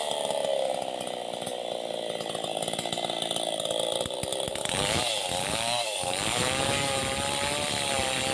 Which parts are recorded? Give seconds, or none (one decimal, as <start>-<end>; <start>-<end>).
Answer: 0.0-4.5; 5.0-5.4; 7.0-8.3